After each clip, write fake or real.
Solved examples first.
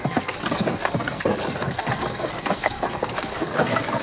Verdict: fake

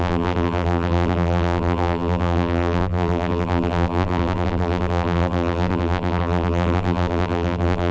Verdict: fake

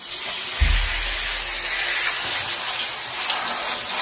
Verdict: real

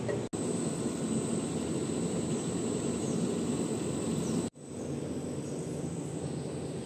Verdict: real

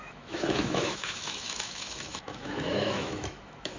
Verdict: fake